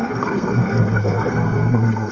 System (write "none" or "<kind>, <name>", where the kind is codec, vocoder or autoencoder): codec, SNAC